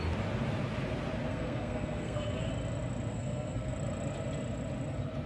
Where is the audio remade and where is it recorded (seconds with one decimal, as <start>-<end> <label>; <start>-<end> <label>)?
0.0-1.3 recorded; 1.3-2.5 remade; 2.5-3.1 recorded; 3.1-3.7 remade; 3.7-5.3 recorded